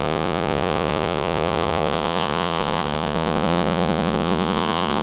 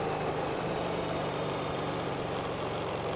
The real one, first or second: second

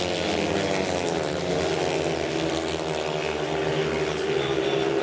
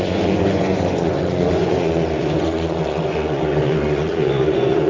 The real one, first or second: first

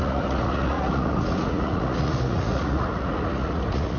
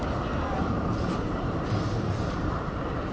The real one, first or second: second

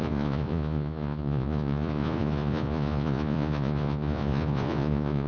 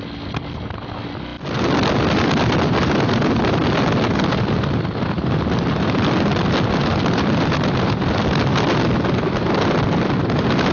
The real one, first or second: second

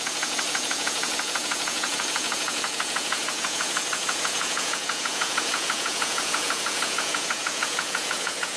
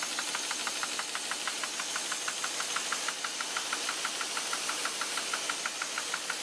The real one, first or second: second